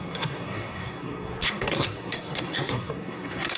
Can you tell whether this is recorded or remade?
remade